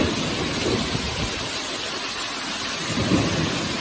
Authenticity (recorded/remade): recorded